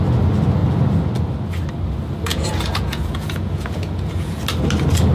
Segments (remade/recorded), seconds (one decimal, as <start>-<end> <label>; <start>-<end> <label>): 0.0-2.3 recorded; 2.3-4.4 remade; 4.4-5.1 recorded